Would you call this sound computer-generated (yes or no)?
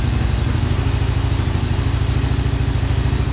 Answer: no